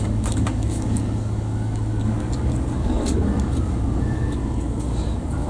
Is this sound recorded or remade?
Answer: remade